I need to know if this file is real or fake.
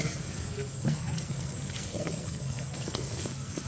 fake